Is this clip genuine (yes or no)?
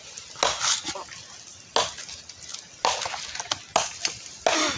yes